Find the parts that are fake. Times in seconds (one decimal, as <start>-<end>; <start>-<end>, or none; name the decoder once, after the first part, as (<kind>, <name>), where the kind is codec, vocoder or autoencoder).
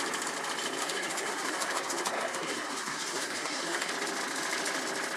0.8-3.9 (codec, SNAC)